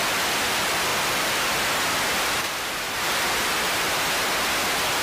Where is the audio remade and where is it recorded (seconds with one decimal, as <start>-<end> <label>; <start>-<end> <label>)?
0.0-0.9 recorded; 0.9-3.9 remade; 3.9-5.0 recorded